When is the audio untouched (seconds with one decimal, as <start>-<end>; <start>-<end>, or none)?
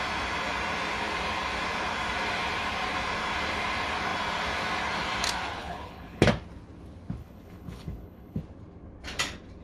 0.0-5.6; 6.3-7.2; 8.4-9.6